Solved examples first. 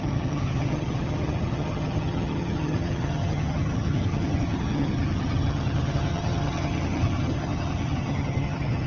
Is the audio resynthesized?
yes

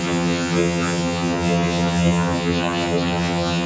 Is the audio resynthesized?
yes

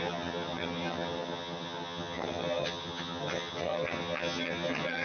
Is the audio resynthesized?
yes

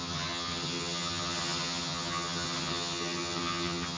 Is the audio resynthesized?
yes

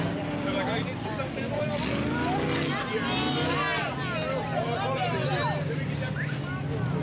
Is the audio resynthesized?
no